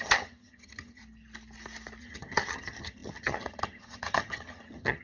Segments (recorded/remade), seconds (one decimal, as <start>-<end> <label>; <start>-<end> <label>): 0.0-1.0 remade; 1.0-2.0 recorded; 2.0-5.0 remade